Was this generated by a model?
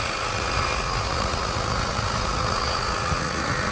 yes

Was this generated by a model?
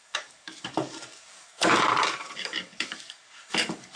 yes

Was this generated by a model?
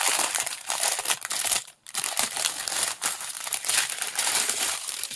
yes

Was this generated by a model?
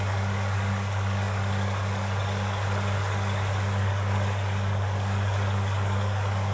yes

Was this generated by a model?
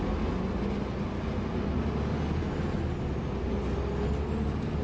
no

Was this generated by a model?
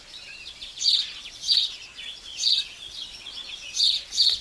yes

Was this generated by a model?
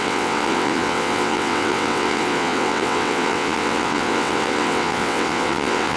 yes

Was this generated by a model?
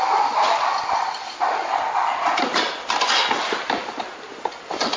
no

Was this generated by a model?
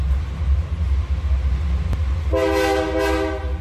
no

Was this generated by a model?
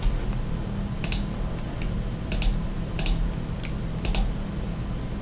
no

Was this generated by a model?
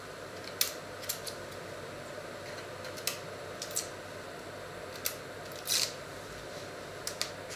no